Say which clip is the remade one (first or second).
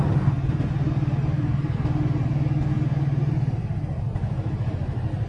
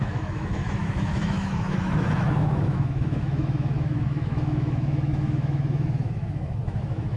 second